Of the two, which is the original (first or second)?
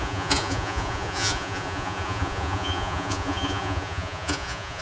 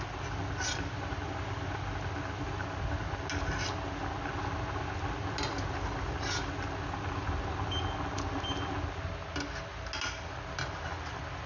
second